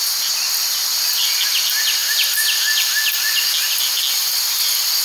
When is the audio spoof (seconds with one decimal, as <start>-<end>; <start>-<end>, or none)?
none